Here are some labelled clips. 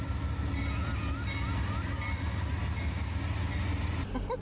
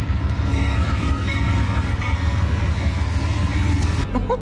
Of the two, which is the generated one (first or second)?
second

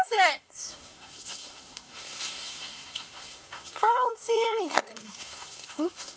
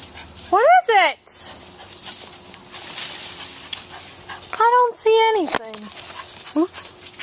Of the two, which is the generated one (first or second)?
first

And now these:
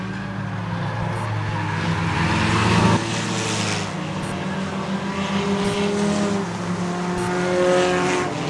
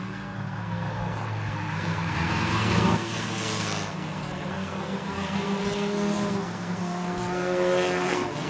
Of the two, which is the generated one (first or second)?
second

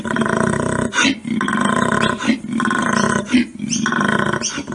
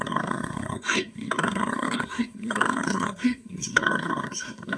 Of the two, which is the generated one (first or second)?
second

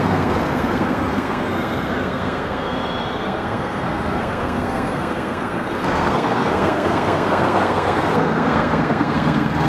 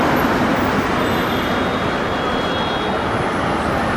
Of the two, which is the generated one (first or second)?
first